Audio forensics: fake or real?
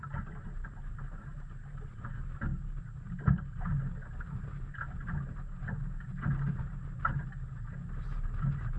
real